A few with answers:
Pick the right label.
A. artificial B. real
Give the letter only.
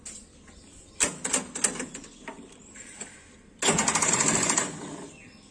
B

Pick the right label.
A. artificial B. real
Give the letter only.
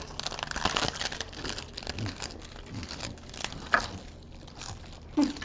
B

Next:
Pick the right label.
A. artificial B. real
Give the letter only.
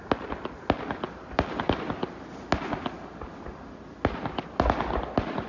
B